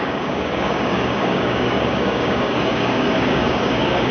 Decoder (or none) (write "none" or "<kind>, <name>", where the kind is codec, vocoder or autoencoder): codec, DAC